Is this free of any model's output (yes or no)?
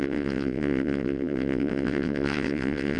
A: no